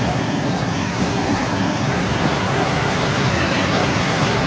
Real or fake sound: fake